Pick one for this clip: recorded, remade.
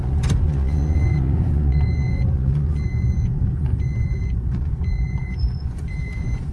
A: remade